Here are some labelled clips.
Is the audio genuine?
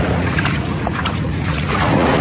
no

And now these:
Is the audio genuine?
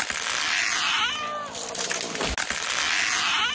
yes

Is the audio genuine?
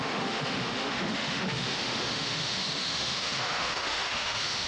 no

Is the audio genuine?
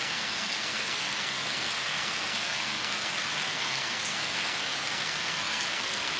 no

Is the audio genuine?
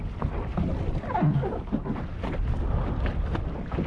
yes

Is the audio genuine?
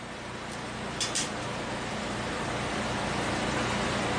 yes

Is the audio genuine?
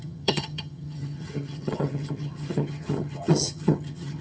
no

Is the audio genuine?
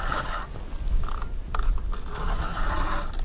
yes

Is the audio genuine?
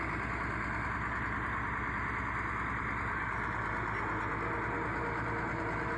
yes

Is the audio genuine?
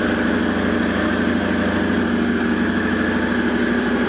yes